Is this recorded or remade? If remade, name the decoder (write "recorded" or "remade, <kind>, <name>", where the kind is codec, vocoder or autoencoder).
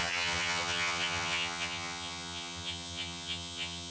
remade, vocoder, HiFi-GAN